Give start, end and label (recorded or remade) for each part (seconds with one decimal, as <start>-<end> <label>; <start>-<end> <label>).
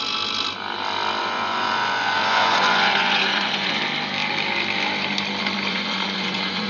0.0-1.2 recorded; 1.2-3.8 remade; 3.8-5.7 recorded; 5.7-6.7 remade